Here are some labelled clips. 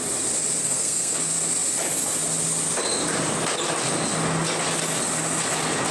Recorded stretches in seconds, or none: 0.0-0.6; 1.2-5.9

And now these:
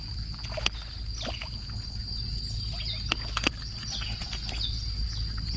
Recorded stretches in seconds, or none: 0.0-5.6

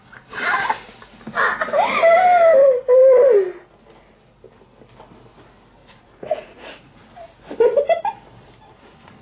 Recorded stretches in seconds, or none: 0.0-5.8; 7.0-9.2

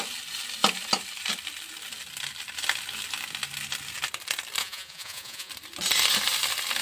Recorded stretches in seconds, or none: 0.0-4.6; 5.5-6.8

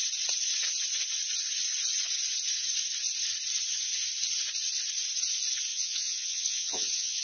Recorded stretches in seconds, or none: 0.0-5.7